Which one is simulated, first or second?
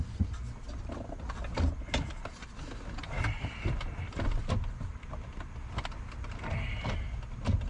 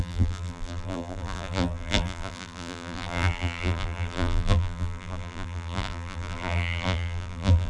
second